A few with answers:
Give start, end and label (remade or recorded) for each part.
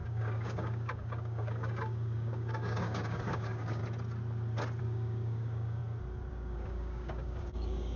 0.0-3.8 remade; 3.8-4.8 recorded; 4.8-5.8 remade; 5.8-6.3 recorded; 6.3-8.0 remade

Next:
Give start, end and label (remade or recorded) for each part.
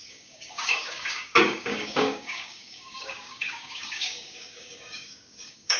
0.0-5.8 remade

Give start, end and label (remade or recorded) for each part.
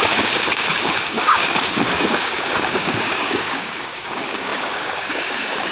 0.0-5.7 remade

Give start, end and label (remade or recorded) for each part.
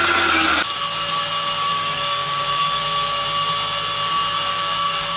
0.0-1.7 recorded; 1.7-2.8 remade; 2.8-4.5 recorded; 4.5-5.2 remade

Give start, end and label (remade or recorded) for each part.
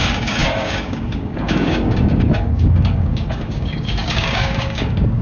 0.0-5.2 remade